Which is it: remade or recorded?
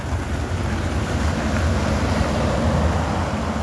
recorded